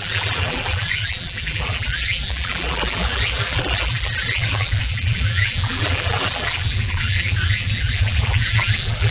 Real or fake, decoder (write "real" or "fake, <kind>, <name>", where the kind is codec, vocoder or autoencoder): fake, vocoder, BigVGAN v2